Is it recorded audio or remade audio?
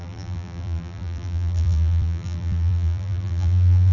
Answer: remade